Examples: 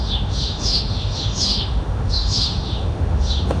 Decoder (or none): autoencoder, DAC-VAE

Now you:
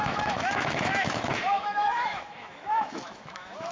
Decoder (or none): autoencoder, DAC-VAE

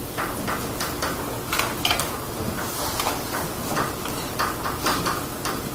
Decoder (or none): none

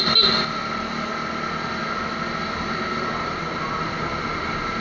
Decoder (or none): none